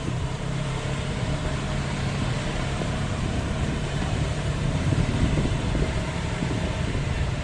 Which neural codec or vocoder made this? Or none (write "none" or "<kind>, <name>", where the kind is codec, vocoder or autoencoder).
vocoder, BigVGAN v2